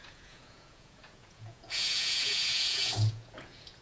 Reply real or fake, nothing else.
fake